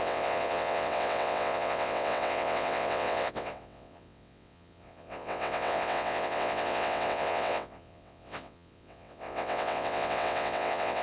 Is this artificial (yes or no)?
yes